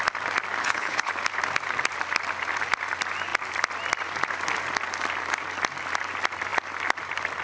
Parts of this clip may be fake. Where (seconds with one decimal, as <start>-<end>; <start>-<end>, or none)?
0.6-1.1